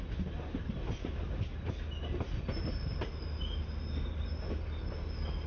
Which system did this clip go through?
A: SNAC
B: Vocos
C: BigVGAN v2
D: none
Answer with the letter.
D